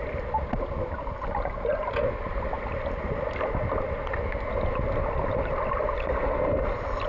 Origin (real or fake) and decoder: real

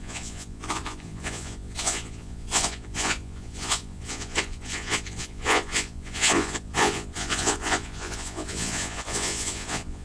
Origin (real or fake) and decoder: fake, vocoder, Vocos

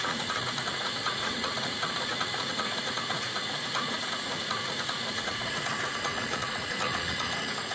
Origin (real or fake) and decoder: fake, vocoder, Vocos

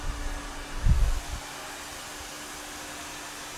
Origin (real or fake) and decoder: real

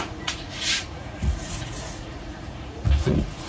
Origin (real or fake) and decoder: fake, vocoder, Vocos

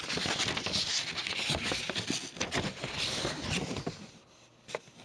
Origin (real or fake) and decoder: real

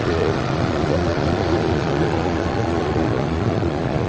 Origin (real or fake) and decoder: fake, vocoder, Vocos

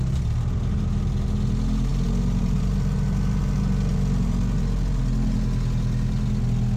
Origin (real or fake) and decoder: real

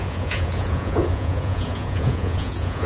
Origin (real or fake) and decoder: fake, vocoder, Vocos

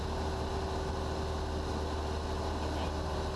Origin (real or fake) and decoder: real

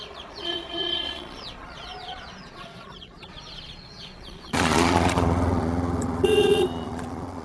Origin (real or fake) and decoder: fake, vocoder, Vocos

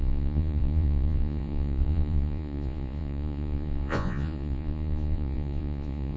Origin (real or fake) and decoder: fake, vocoder, Vocos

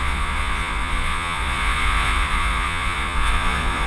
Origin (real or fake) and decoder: fake, vocoder, Vocos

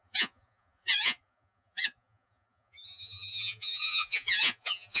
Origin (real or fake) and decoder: fake, vocoder, Vocos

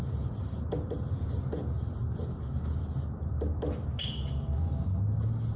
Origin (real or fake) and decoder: real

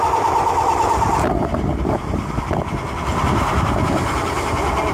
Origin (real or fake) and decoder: real